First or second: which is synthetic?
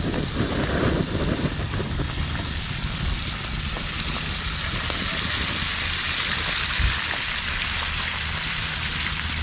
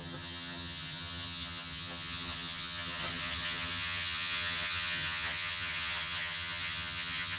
second